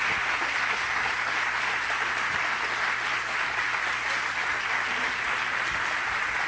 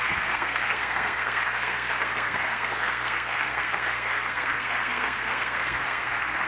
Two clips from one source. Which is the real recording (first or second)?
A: first